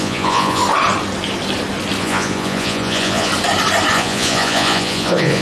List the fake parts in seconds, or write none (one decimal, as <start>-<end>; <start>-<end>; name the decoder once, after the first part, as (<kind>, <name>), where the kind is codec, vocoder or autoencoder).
0.0-0.6 (vocoder, Vocos); 2.0-3.3; 3.9-5.4